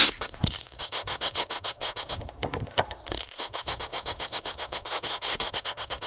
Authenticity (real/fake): fake